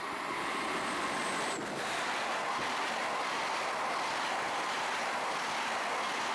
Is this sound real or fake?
real